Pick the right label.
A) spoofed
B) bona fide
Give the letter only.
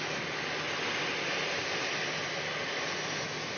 B